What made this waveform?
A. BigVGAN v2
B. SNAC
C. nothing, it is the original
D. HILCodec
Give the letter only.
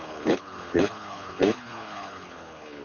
D